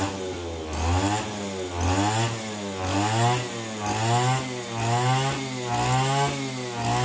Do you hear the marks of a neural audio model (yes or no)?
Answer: no